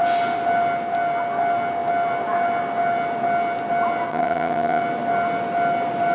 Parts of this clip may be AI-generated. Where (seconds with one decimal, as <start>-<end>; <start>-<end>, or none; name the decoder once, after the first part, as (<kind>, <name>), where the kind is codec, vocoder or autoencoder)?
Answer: 4.1-4.8 (vocoder, HiFi-GAN)